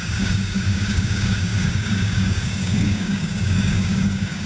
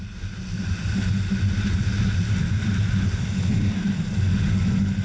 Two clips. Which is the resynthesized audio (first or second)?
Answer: first